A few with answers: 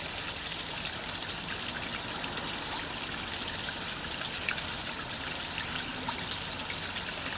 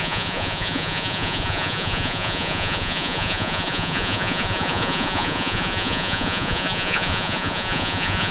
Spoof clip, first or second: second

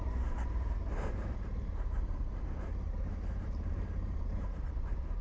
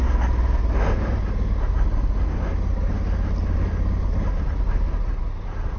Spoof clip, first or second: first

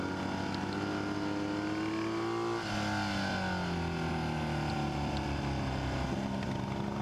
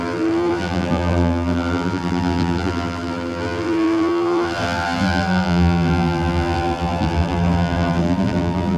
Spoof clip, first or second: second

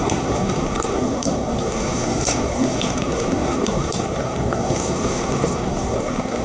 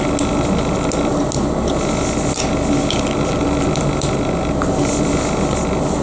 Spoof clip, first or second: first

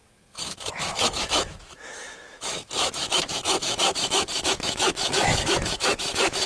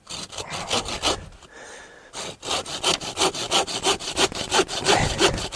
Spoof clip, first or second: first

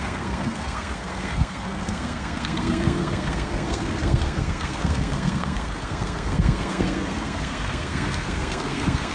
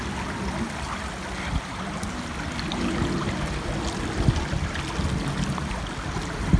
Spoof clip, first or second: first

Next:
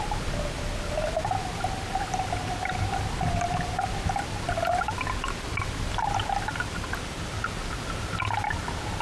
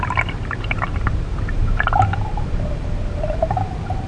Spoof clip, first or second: second